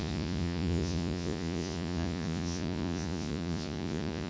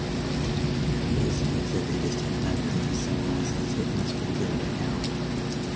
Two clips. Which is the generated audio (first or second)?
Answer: first